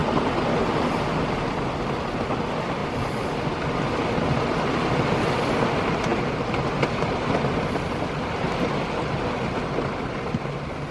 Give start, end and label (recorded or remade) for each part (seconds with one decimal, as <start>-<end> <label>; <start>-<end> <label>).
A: 0.0-10.9 recorded